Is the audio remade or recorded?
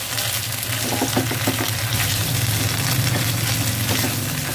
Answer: recorded